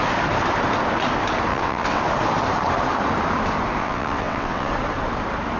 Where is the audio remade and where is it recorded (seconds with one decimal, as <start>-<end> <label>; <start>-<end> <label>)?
0.0-1.5 recorded; 1.5-2.0 remade; 2.0-3.8 recorded; 3.8-4.7 remade; 4.7-5.6 recorded